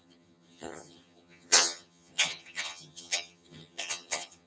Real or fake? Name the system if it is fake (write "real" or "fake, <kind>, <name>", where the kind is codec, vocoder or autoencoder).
fake, vocoder, HiFi-GAN